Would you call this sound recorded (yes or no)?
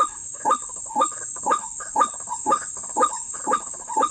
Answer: no